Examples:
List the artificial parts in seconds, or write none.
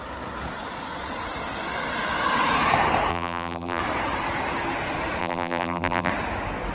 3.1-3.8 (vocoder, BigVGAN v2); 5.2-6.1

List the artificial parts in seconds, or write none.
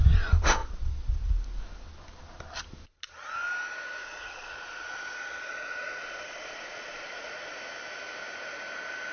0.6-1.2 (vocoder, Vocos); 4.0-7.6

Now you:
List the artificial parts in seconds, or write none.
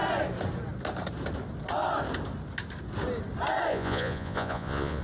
3.7-5.0 (vocoder, Vocos)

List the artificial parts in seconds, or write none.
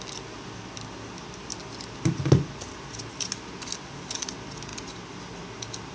none